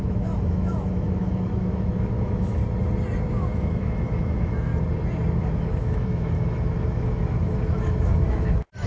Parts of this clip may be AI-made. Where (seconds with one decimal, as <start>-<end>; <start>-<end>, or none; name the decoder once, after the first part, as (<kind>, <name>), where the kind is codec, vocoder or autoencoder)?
0.0-2.6 (autoencoder, DAC-VAE); 3.3-4.7; 5.4-8.9